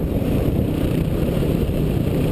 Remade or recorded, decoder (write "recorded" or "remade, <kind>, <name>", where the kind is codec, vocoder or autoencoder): remade, vocoder, BigVGAN v2